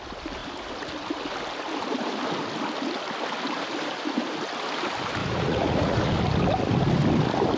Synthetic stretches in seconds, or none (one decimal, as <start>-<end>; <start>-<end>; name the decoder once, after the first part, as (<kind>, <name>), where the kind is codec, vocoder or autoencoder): 5.2-6.1 (vocoder, Vocos)